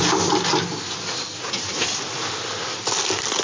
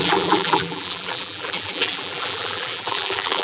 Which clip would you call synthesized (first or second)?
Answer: second